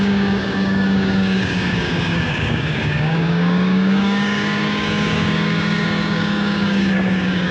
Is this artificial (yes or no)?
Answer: yes